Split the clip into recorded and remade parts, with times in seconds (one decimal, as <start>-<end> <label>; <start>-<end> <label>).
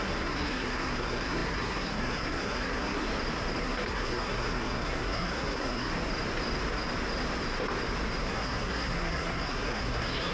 0.0-3.1 remade; 3.1-3.6 recorded; 3.6-5.9 remade; 5.9-8.2 recorded; 8.2-10.3 remade